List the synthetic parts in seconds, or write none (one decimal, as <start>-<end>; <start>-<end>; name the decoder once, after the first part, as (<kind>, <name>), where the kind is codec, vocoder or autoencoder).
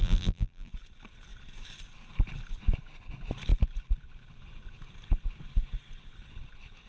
0.0-0.7 (vocoder, BigVGAN v2)